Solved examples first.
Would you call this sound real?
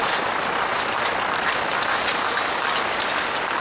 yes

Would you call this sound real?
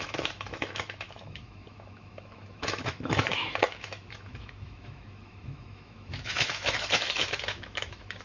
no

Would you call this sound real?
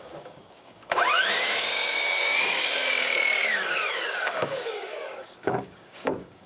no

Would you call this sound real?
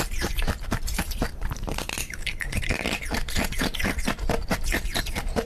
no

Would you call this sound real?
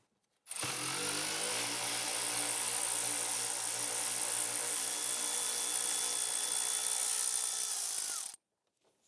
yes